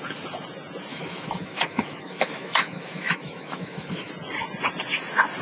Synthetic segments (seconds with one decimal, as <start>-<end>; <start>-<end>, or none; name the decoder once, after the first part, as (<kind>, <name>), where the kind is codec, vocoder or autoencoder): 0.9-4.1 (autoencoder, DAC-VAE)